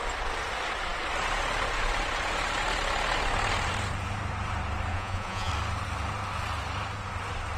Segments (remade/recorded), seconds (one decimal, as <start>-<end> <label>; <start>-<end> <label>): 0.0-4.9 recorded; 4.9-5.5 remade; 5.5-7.6 recorded